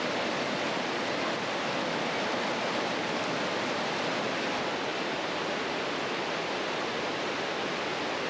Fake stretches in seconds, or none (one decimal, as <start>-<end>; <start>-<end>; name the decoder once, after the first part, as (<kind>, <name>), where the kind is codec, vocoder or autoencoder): none